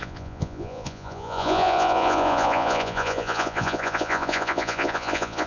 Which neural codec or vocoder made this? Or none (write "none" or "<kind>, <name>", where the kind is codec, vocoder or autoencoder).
vocoder, Vocos